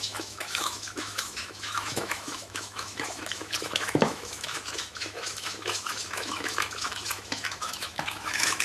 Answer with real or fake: fake